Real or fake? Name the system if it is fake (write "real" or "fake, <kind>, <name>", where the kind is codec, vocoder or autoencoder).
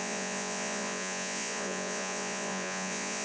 fake, vocoder, Vocos